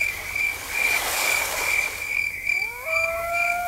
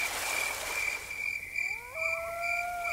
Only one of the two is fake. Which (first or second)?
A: first